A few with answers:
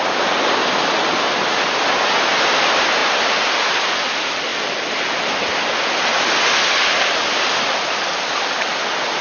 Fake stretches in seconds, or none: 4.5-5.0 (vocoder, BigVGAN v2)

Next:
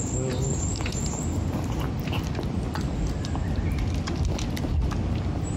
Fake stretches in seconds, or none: none

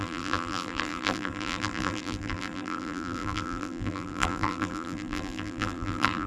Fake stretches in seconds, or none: 0.0-6.3 (vocoder, BigVGAN v2)

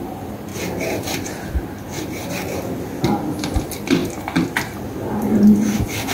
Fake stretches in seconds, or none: none

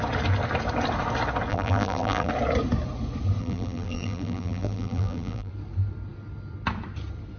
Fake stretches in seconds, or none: 1.5-2.3 (vocoder, BigVGAN v2); 3.4-5.5

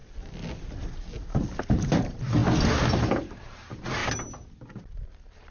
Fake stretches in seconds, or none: 1.6-2.4 (vocoder, BigVGAN v2); 2.9-4.0; 4.8-5.5

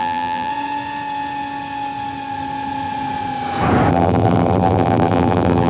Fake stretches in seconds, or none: 0.0-0.5 (vocoder, BigVGAN v2); 3.9-5.7

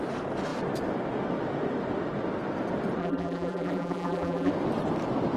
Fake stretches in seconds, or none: 3.0-4.5 (vocoder, BigVGAN v2)